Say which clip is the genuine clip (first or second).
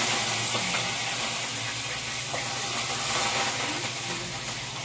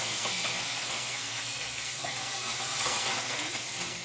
first